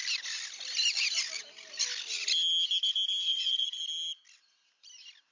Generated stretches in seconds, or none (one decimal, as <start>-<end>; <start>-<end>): 3.3-3.8